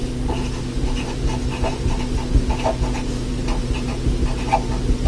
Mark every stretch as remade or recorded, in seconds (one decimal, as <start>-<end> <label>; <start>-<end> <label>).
0.0-5.1 recorded